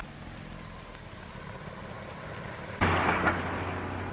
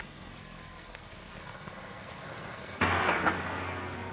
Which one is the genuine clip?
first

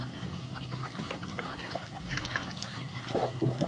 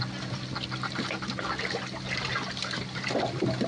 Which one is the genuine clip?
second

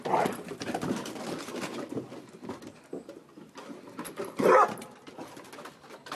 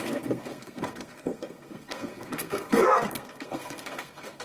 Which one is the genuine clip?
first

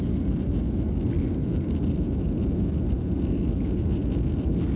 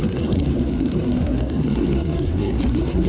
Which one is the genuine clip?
first